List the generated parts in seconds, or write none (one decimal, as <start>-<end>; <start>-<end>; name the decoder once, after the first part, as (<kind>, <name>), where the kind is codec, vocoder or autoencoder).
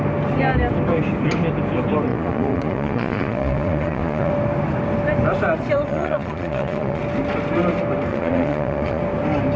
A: 2.1-4.3 (vocoder, Vocos); 5.9-7.0; 8.1-9.0